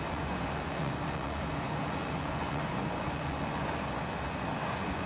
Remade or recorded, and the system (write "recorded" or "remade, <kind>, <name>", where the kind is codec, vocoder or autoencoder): remade, vocoder, Vocos